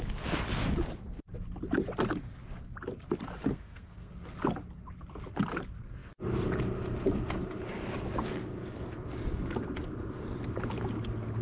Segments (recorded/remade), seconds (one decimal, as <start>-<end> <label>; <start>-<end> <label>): 0.0-3.5 recorded; 3.5-4.1 remade; 4.1-11.4 recorded